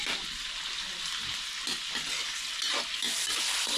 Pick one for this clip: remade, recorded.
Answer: recorded